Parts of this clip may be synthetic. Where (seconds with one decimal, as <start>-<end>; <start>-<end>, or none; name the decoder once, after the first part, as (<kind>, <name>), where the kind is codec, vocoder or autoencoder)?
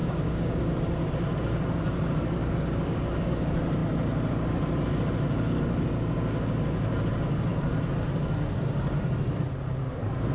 0.0-0.6 (codec, DAC); 2.4-3.3